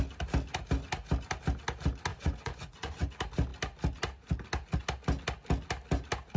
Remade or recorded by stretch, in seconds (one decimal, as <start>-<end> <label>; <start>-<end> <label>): 0.0-2.1 recorded; 2.1-3.1 remade; 3.1-6.4 recorded